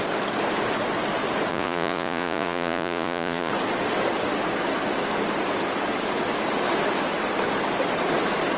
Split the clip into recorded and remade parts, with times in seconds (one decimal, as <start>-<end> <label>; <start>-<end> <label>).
0.0-1.5 recorded; 1.5-3.5 remade; 3.5-8.6 recorded